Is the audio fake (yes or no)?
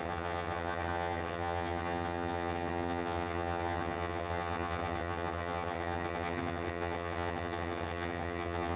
yes